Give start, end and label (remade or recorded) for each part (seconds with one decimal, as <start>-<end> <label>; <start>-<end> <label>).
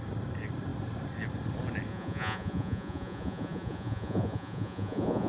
0.0-1.9 recorded; 1.9-5.3 remade